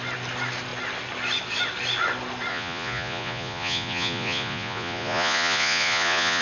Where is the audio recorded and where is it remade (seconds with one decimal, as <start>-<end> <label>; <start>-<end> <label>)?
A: 0.0-2.5 recorded; 2.5-6.4 remade